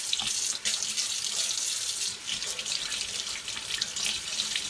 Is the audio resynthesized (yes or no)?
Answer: no